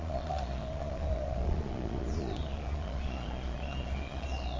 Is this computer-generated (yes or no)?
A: yes